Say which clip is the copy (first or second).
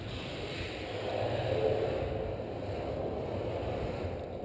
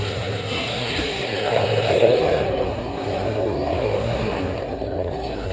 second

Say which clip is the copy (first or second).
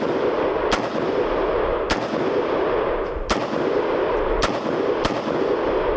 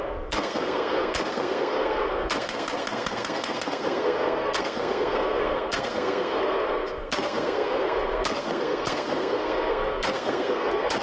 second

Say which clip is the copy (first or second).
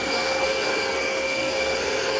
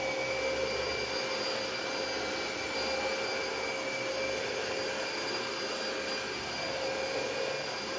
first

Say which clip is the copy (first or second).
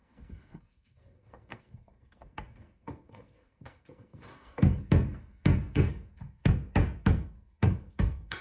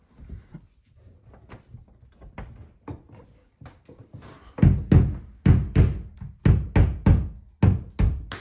first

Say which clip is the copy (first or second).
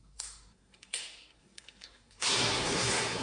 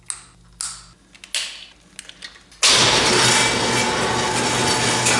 first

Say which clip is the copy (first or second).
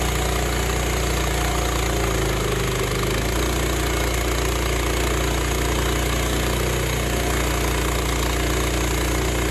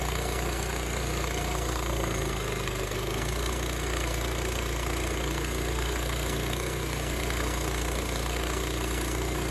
second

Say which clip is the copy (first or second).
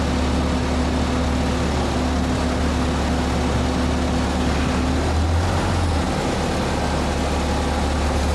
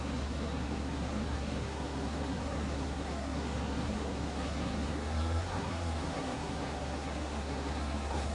second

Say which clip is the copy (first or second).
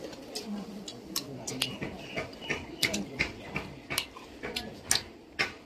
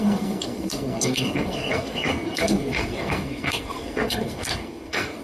second